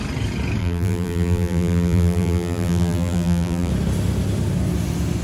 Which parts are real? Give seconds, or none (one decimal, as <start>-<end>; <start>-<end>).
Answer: 0.0-0.6; 3.7-5.2